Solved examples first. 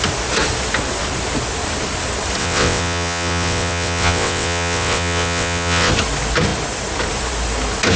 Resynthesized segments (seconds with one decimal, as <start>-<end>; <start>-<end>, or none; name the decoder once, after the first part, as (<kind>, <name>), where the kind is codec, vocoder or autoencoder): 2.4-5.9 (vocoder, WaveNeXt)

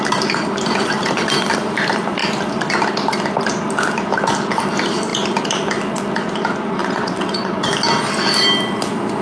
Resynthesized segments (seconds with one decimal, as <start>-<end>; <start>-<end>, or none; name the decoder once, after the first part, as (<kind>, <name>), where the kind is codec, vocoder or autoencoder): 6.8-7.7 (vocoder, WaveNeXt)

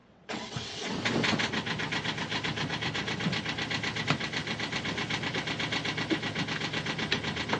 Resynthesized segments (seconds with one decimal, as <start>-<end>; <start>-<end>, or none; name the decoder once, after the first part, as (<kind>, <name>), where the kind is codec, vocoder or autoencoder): 0.0-0.9 (vocoder, WaveNeXt)